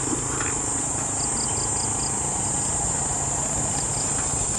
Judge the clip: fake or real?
real